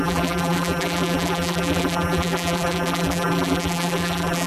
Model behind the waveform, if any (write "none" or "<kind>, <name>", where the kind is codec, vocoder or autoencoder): vocoder, BigVGAN v2